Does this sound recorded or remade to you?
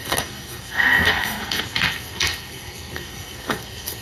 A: remade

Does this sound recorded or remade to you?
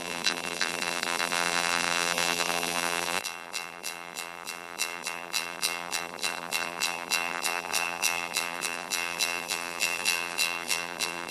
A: remade